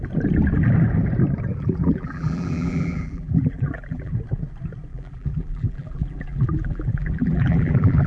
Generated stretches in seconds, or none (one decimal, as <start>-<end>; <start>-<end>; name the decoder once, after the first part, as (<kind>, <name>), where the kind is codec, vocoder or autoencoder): 1.5-4.1 (vocoder, BigVGAN v2); 4.9-8.1